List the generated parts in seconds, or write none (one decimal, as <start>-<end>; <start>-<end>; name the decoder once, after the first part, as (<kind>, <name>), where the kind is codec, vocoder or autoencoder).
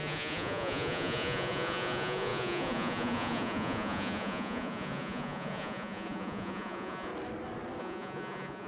0.0-7.1 (vocoder, Vocos); 7.8-8.7